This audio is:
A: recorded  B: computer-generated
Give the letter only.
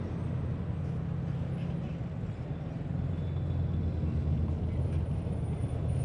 A